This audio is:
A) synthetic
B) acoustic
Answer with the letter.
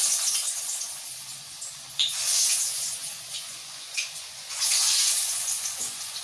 A